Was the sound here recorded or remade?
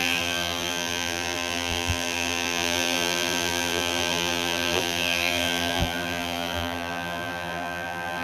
remade